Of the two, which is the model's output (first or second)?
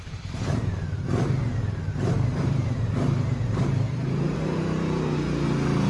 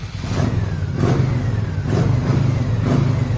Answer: first